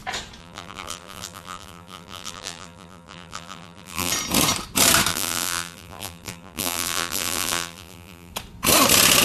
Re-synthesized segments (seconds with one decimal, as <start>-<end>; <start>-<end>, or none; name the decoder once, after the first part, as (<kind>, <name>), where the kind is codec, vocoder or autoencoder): 0.4-4.1 (vocoder, BigVGAN v2); 5.1-8.3